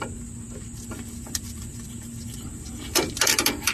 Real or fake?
real